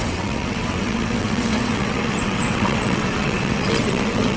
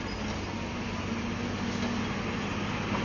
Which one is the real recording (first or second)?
second